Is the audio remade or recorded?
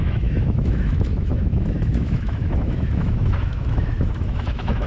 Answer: remade